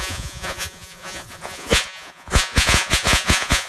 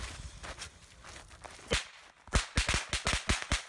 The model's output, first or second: first